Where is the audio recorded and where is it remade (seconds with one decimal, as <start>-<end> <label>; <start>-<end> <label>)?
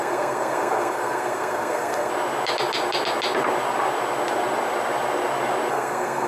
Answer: 0.0-2.1 remade; 2.1-5.7 recorded; 5.7-6.3 remade